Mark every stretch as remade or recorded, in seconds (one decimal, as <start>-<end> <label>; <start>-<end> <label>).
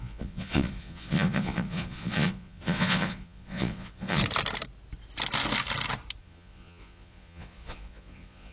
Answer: 0.0-4.2 remade; 4.2-6.2 recorded; 6.2-8.5 remade